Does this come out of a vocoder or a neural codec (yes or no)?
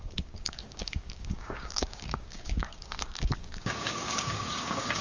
yes